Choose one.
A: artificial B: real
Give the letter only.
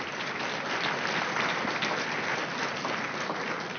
B